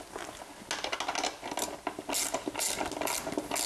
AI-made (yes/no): no